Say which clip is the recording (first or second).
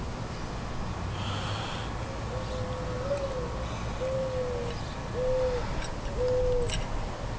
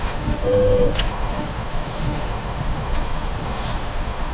first